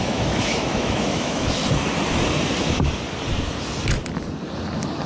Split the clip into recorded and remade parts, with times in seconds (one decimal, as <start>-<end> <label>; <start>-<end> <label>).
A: 0.0-1.6 remade; 1.6-5.1 recorded